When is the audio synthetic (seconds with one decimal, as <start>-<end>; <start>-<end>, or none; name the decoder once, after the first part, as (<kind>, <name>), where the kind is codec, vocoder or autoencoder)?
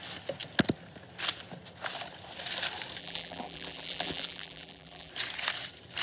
3.0-5.1 (vocoder, BigVGAN v2)